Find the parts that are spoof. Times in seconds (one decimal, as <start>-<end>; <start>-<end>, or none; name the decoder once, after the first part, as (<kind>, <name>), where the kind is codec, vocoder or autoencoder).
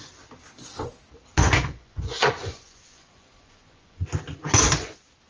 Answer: 1.4-4.0 (vocoder, Vocos)